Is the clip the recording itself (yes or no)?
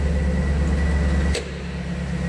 yes